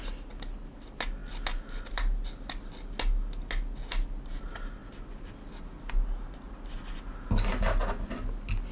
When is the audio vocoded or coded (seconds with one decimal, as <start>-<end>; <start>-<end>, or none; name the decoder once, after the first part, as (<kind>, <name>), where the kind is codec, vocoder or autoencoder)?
none